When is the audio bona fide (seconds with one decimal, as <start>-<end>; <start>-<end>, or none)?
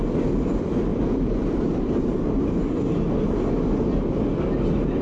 0.0-0.9; 3.4-5.0